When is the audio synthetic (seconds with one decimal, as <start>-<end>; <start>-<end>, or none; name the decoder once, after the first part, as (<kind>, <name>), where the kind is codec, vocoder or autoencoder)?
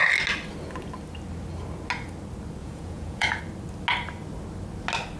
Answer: 2.6-3.4 (vocoder, Vocos)